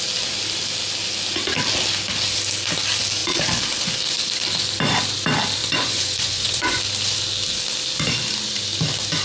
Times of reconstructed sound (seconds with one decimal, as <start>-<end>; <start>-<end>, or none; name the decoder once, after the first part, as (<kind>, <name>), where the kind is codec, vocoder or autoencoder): 5.6-6.8 (vocoder, Vocos)